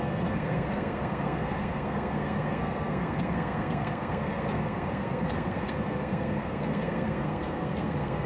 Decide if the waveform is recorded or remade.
remade